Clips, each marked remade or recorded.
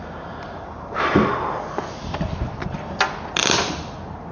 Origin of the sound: recorded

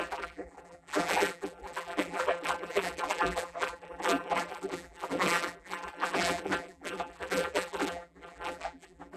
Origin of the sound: remade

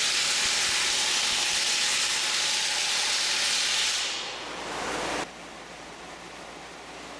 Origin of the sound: recorded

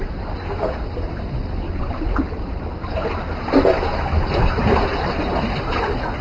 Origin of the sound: recorded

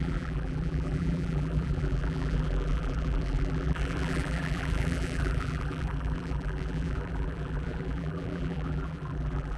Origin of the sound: remade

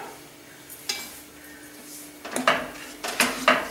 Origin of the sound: recorded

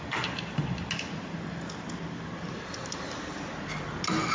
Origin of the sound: recorded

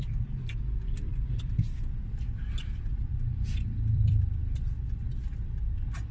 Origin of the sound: remade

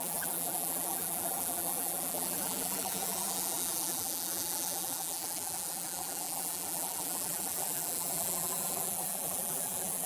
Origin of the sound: remade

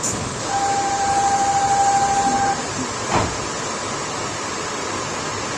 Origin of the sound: recorded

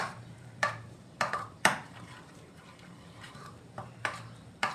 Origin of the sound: remade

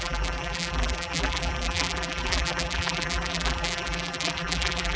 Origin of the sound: remade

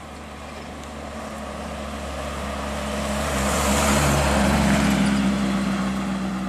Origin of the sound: recorded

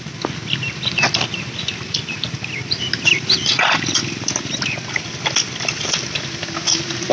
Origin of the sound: recorded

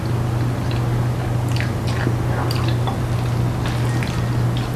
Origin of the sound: recorded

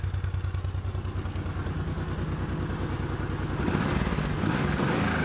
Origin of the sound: recorded